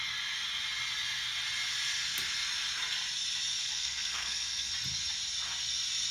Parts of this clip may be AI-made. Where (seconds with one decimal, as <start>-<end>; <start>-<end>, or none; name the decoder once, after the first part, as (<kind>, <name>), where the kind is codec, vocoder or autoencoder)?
3.6-4.7 (codec, SNAC)